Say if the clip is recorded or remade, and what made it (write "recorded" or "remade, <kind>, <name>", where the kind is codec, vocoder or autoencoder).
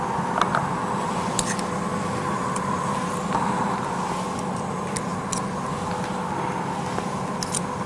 recorded